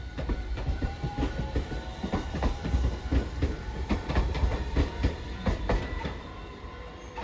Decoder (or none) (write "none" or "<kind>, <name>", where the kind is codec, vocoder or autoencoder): vocoder, BigVGAN v2